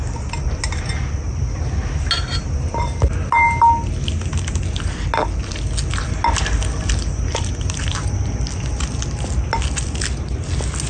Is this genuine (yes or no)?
yes